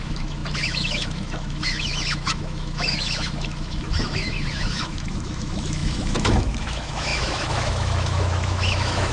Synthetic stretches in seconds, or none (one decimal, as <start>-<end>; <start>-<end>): 0.0-9.1